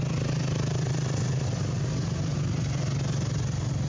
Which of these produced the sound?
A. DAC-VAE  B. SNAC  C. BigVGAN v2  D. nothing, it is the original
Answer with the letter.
D